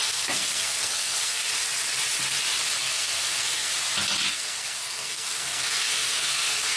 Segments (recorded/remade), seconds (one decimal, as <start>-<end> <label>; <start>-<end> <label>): 0.0-1.4 remade; 1.4-2.8 recorded; 2.8-3.7 remade; 3.7-4.3 recorded; 4.3-6.8 remade